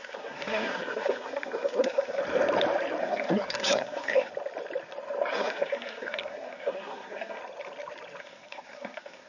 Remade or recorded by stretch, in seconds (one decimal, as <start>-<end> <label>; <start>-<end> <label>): 0.0-2.2 remade; 2.2-3.0 recorded; 3.0-4.3 remade; 4.3-5.3 recorded; 5.3-7.4 remade; 7.4-8.2 recorded; 8.2-9.3 remade